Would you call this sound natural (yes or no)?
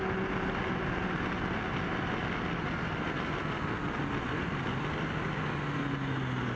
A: yes